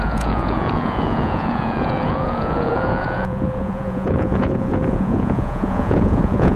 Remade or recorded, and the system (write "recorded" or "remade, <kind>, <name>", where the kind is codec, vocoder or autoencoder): remade, vocoder, Vocos